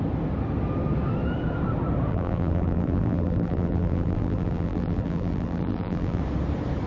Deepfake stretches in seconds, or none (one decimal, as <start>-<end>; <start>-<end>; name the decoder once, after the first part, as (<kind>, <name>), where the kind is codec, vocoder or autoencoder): 2.1-6.2 (vocoder, BigVGAN v2)